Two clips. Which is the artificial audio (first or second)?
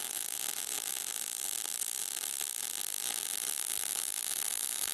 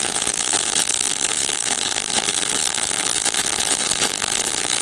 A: second